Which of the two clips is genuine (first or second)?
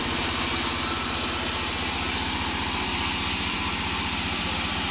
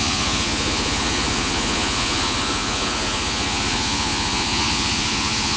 first